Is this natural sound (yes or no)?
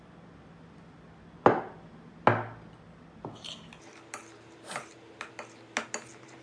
yes